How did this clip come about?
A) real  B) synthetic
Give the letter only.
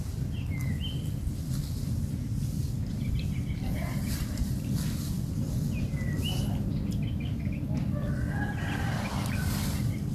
A